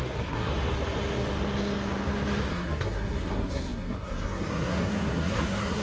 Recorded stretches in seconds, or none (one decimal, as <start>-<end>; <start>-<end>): 0.5-2.5